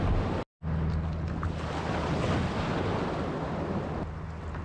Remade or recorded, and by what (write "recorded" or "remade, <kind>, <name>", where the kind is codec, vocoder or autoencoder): recorded